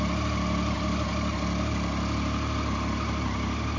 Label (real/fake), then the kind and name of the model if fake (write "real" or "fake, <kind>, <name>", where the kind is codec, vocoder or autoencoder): real